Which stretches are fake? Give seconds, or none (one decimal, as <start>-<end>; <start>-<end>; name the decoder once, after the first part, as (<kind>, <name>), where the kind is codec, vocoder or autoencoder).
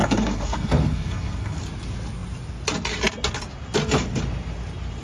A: 0.0-1.6 (codec, SNAC)